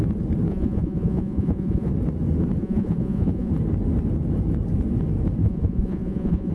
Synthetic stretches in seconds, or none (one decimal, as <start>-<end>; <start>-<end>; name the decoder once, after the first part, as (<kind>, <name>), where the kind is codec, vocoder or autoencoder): 0.5-1.9 (vocoder, Vocos); 2.6-3.5; 5.4-6.5